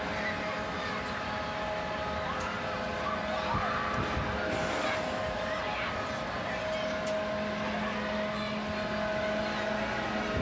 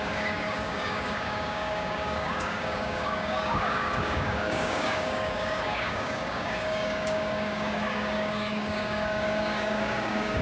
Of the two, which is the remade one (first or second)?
second